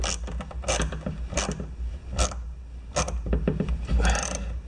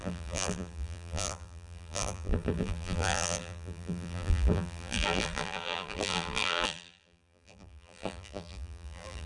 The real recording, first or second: first